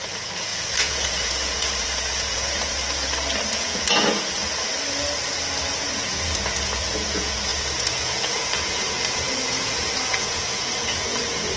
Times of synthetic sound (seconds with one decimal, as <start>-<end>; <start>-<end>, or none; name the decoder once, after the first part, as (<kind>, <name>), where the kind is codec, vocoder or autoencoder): 0.0-2.8 (vocoder, Vocos); 3.5-4.4; 5.8-11.6